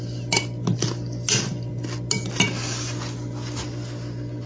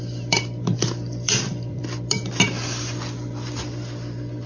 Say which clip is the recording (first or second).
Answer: first